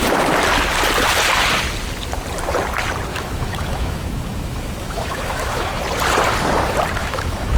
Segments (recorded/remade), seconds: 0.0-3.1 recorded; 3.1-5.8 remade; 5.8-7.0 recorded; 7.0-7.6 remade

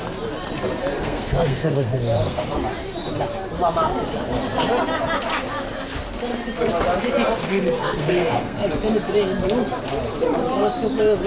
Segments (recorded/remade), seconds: 0.0-1.0 recorded; 1.0-2.4 remade; 2.4-7.4 recorded; 7.4-8.7 remade; 8.7-11.3 recorded

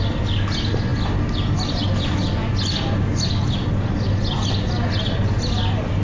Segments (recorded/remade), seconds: 0.0-6.0 recorded

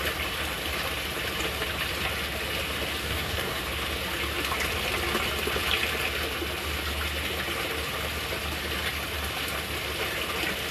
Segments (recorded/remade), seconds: 0.0-3.0 recorded; 3.0-3.6 remade; 3.6-10.7 recorded

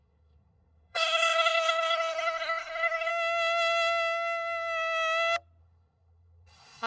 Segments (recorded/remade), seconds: 0.0-3.1 remade; 3.1-5.6 recorded; 5.6-6.9 remade

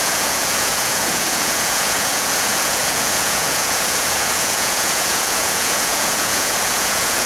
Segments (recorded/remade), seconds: 0.0-7.3 remade

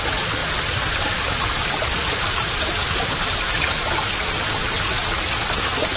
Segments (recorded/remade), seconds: 0.0-0.4 recorded; 0.4-4.0 remade; 4.0-6.0 recorded

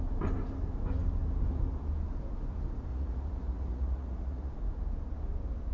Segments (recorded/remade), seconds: 0.0-2.9 recorded; 2.9-4.5 remade; 4.5-5.7 recorded